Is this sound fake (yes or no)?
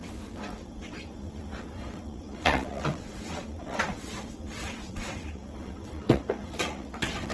yes